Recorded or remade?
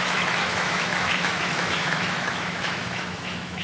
remade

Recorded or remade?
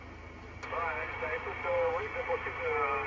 recorded